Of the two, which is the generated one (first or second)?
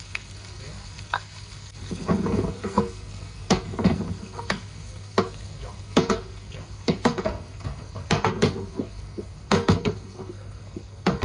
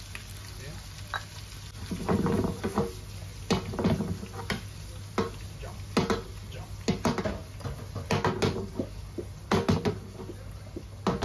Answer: first